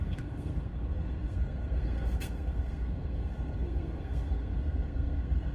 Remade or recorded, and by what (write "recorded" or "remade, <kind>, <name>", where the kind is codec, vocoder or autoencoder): remade, codec, SNAC